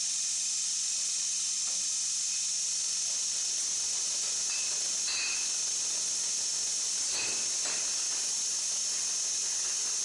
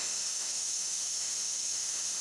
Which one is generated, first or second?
second